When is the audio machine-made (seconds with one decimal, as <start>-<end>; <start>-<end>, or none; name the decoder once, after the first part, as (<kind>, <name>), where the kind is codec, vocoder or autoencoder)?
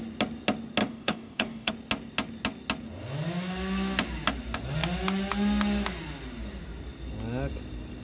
0.8-1.7 (codec, DAC)